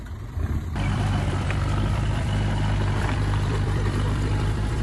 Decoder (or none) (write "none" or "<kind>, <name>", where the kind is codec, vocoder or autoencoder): vocoder, BigVGAN v2